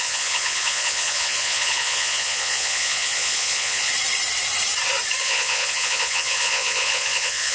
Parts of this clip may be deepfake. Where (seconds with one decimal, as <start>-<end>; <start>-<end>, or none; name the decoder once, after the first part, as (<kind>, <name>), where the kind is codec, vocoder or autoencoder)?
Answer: 0.0-3.9 (vocoder, Vocos); 5.2-7.5